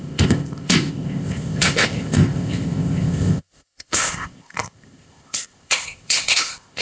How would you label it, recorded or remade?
remade